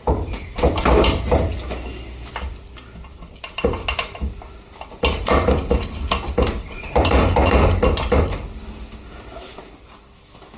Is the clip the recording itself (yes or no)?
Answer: yes